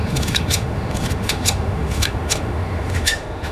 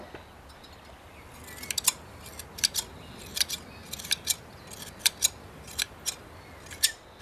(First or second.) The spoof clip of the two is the first